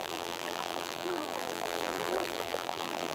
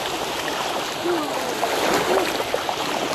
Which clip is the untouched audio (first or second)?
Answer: second